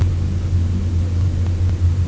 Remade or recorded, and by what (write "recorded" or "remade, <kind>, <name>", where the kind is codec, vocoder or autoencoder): recorded